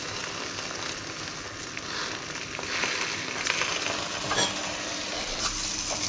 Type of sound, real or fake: real